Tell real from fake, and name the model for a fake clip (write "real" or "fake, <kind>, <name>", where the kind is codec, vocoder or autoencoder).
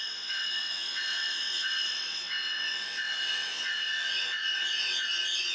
fake, vocoder, WaveNeXt